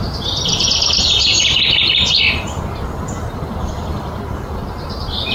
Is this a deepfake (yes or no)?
no